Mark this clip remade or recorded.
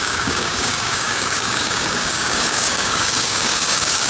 remade